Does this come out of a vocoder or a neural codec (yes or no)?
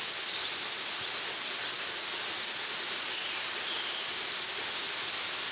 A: no